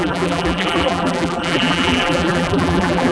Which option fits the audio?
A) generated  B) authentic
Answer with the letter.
A